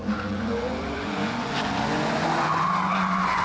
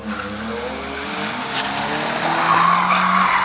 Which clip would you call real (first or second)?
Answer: second